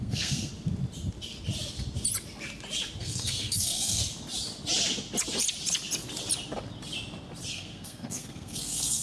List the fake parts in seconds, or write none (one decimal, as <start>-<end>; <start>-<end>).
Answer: 0.0-0.5; 3.0-4.0; 7.5-9.0